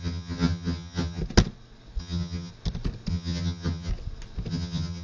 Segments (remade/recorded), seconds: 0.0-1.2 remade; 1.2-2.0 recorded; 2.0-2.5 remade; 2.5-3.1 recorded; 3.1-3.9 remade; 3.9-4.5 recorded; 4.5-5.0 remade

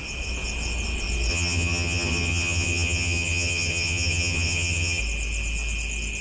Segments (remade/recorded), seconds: 0.0-1.3 recorded; 1.3-5.0 remade; 5.0-6.2 recorded

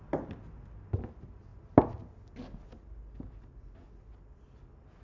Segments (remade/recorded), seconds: 0.0-5.0 recorded